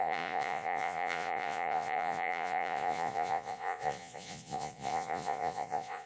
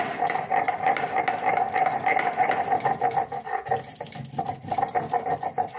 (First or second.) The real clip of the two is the second